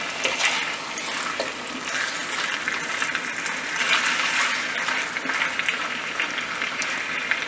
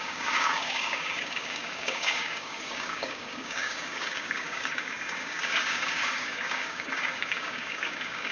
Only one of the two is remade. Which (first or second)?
second